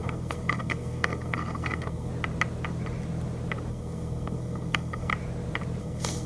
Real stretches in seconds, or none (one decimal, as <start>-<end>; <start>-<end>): 2.1-3.7; 5.1-5.8